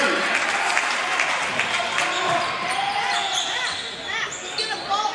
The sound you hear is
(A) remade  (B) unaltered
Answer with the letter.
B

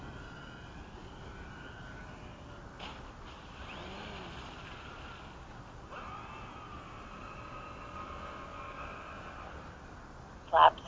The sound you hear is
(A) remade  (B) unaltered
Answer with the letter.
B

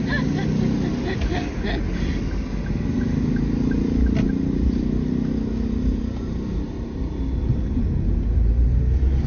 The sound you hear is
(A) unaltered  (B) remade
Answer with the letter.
A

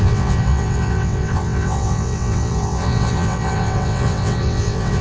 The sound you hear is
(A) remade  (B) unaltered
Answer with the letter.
A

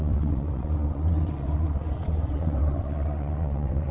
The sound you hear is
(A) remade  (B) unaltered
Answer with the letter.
A